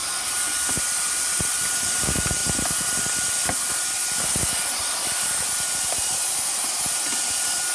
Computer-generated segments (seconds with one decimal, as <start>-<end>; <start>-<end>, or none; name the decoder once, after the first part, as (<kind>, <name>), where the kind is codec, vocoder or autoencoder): 4.0-5.6 (vocoder, BigVGAN v2)